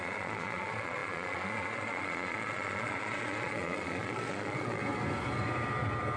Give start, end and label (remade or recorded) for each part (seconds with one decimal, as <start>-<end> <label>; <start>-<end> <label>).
0.0-4.8 remade; 4.8-6.2 recorded